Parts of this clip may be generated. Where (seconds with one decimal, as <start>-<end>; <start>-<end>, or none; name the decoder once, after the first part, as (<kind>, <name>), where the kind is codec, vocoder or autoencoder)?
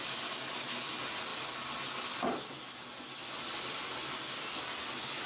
none